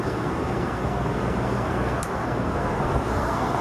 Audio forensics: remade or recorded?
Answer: remade